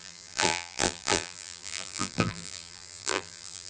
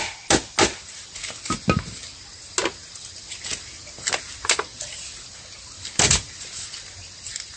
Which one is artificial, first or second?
first